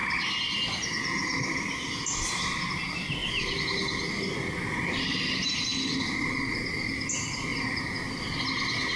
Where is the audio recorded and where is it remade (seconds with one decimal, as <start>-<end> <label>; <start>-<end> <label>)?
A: 0.0-9.0 recorded